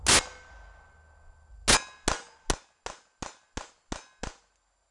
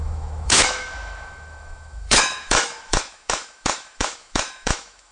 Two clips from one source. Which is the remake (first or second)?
second